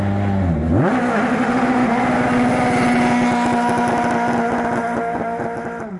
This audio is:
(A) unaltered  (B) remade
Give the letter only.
A